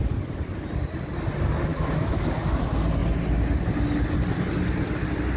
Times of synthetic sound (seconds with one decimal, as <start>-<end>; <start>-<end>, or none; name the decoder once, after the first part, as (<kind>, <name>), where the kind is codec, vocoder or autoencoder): 1.7-2.6 (autoencoder, DAC-VAE)